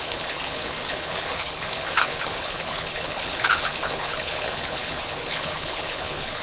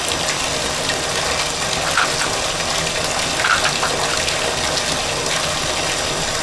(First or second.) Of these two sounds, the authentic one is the second